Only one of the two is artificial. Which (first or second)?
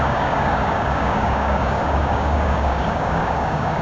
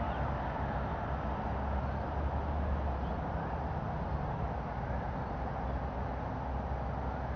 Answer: first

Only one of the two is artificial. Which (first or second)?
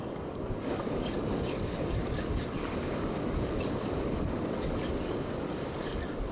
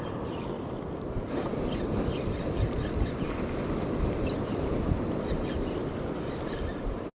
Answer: first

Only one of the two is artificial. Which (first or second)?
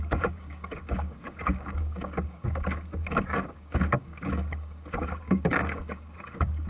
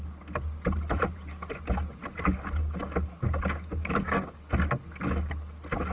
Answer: first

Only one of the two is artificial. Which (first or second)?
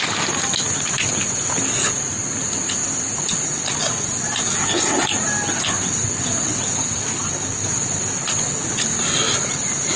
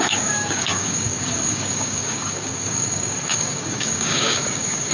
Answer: second